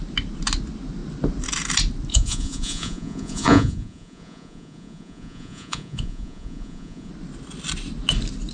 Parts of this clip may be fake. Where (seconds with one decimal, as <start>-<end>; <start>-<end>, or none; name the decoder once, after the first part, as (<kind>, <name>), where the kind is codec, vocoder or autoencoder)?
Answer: 2.1-7.1 (vocoder, Vocos)

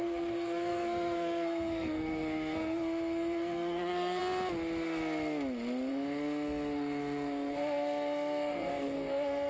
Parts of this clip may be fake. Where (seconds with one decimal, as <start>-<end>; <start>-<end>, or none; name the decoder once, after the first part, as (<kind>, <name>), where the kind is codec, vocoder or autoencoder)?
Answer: 0.0-4.2 (codec, SNAC); 5.9-9.5

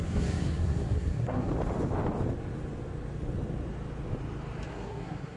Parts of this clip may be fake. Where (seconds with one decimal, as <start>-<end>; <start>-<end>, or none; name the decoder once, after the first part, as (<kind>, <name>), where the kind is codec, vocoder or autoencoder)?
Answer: 0.0-1.5 (codec, SNAC); 4.7-5.4

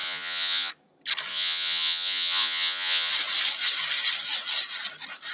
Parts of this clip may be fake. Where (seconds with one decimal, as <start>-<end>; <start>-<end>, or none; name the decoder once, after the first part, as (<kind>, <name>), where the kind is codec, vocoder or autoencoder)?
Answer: 0.0-0.7 (vocoder, Vocos); 1.3-3.1

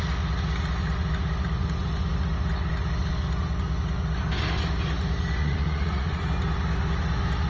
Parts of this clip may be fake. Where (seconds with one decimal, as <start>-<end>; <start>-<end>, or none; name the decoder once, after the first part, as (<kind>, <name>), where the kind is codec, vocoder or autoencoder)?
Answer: 5.4-6.2 (vocoder, Vocos)